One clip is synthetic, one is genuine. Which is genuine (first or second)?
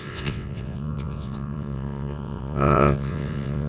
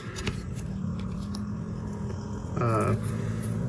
second